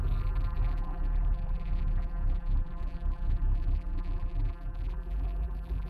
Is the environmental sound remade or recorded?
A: remade